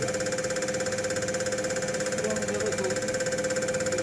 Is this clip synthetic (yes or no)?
no